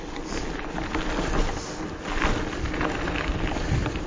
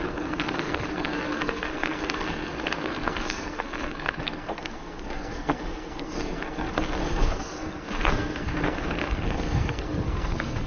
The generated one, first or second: second